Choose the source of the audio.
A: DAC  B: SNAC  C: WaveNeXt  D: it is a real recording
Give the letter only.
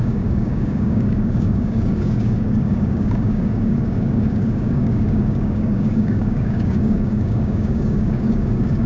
A